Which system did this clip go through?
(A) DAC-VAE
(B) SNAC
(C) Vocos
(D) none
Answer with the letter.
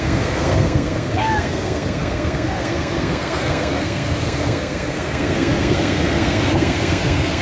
B